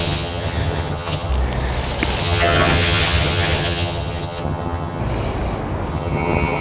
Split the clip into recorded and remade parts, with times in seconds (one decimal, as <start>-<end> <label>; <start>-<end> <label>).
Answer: 0.0-1.3 remade; 1.3-2.2 recorded; 2.2-5.0 remade; 5.0-5.9 recorded; 5.9-6.6 remade